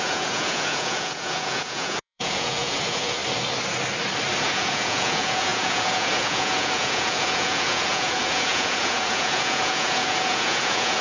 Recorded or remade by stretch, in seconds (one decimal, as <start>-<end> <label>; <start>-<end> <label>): 0.0-3.2 remade; 3.2-4.4 recorded; 4.4-11.0 remade